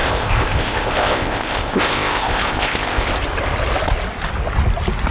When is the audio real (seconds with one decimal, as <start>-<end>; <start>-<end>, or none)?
3.1-5.1